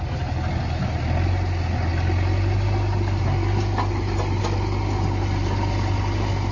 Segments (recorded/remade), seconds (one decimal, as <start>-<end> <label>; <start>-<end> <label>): 0.0-6.5 recorded